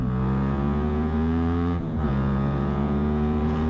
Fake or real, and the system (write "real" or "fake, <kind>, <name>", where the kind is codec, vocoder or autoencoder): fake, vocoder, Vocos